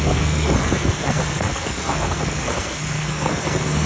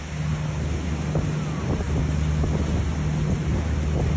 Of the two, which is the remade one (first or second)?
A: first